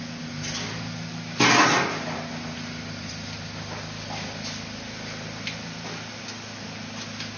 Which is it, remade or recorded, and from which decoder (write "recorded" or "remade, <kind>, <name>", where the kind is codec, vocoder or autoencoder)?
recorded